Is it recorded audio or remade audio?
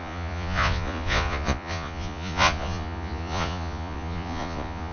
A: remade